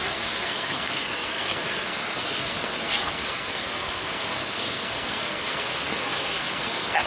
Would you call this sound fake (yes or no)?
yes